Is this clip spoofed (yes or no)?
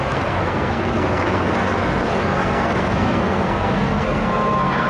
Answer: yes